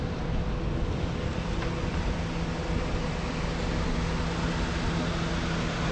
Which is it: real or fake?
real